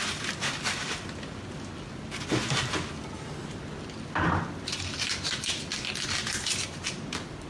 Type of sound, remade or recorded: recorded